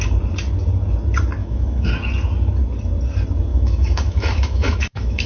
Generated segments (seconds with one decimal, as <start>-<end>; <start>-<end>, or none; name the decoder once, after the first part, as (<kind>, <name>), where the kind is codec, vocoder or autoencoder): 1.4-1.9 (autoencoder, DAC-VAE); 3.5-5.3